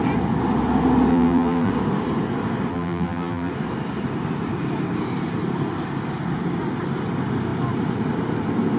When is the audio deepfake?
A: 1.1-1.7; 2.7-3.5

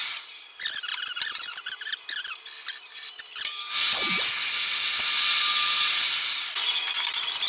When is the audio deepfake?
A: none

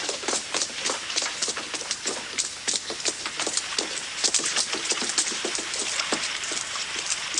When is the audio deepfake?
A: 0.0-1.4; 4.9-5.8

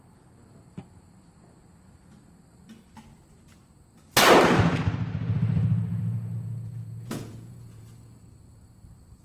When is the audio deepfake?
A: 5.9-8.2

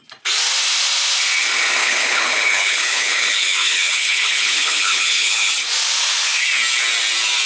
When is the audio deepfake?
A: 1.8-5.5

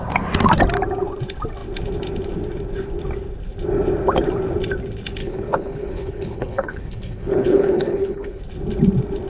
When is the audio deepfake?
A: 5.2-8.4

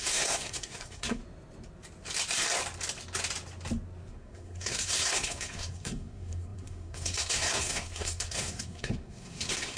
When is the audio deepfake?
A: 0.0-1.2; 4.1-9.8

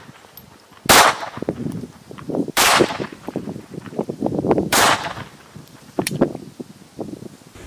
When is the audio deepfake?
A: 1.6-6.1